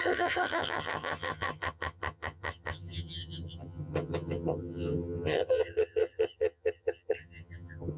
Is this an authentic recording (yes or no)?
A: no